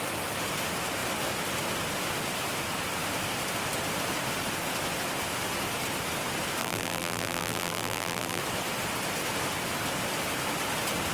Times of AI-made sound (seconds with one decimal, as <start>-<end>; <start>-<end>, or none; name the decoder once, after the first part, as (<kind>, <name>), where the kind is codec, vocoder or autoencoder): 6.6-8.4 (vocoder, BigVGAN v2)

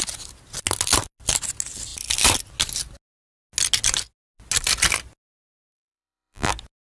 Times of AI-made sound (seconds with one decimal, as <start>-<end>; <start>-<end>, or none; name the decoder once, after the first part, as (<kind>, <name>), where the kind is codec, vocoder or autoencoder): 5.6-6.5 (vocoder, BigVGAN v2)

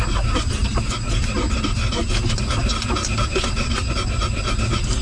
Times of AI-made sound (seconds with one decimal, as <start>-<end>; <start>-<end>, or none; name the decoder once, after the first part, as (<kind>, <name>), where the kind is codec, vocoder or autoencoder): none

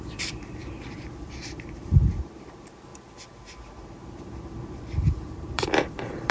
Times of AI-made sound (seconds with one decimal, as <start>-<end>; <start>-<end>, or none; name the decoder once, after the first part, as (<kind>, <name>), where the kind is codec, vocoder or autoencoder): 0.0-2.9 (vocoder, BigVGAN v2); 4.8-6.3

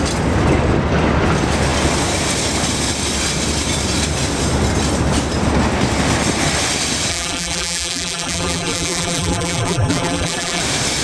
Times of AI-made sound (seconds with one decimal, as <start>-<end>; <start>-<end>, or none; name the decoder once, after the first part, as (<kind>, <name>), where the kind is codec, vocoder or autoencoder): 7.1-10.6 (vocoder, BigVGAN v2)

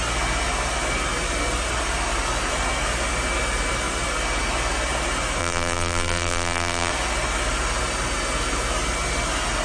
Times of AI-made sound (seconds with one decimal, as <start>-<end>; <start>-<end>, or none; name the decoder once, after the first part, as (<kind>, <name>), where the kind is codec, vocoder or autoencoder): 5.4-6.9 (vocoder, BigVGAN v2)

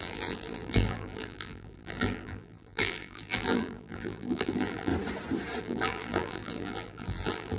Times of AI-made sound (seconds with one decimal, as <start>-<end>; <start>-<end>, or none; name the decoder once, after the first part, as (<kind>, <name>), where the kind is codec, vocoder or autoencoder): 0.0-4.9 (vocoder, BigVGAN v2); 5.6-7.6